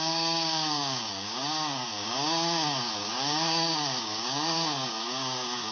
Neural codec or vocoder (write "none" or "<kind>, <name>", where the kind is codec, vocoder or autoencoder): codec, DAC